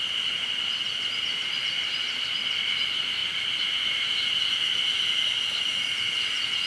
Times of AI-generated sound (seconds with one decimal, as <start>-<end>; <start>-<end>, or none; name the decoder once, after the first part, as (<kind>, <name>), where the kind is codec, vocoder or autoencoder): none